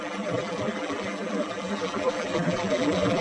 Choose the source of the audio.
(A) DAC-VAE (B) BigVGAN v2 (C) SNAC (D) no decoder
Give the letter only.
B